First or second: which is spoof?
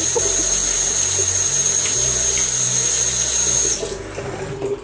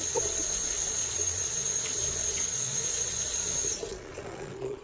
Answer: second